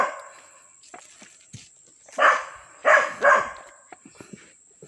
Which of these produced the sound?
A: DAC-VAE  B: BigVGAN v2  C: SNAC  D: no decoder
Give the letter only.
D